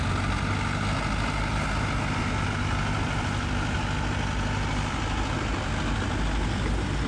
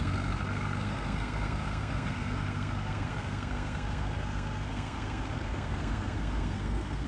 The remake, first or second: second